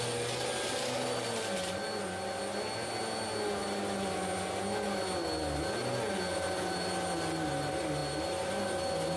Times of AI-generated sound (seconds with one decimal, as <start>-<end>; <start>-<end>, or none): none